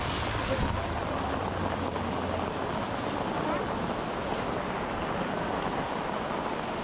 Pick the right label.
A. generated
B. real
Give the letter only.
B